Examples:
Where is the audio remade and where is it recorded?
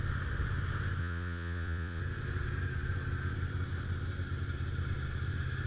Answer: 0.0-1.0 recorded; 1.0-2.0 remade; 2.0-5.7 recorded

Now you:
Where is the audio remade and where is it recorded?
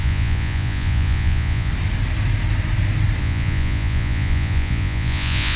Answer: 0.0-1.7 remade; 1.7-3.2 recorded; 3.2-5.6 remade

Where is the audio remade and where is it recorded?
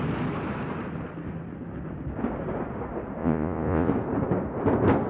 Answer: 0.0-3.2 recorded; 3.2-3.9 remade; 3.9-5.1 recorded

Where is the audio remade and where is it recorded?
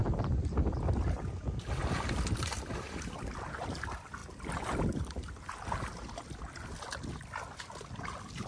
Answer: 0.0-8.5 recorded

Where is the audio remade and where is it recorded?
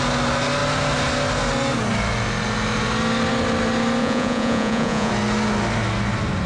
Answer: 0.0-4.0 recorded; 4.0-5.1 remade; 5.1-6.5 recorded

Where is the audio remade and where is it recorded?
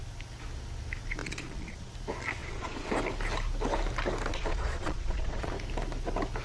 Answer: 0.0-1.2 recorded; 1.2-1.9 remade; 1.9-2.4 recorded; 2.4-2.9 remade; 2.9-4.3 recorded; 4.3-5.5 remade; 5.5-6.4 recorded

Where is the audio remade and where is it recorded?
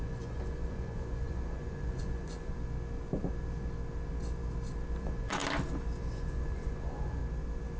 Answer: 0.0-2.5 remade; 2.5-5.0 recorded; 5.0-5.4 remade; 5.4-6.1 recorded; 6.1-7.2 remade; 7.2-7.8 recorded